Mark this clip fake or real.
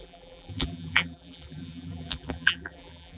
fake